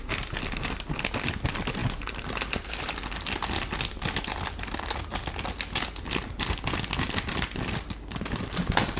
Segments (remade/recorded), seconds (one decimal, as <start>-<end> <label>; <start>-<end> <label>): 0.0-9.0 recorded